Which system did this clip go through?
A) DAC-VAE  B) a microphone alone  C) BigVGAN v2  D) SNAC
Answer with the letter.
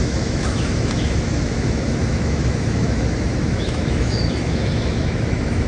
A